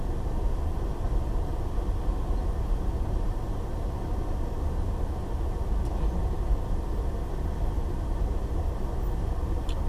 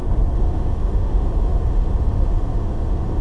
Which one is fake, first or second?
second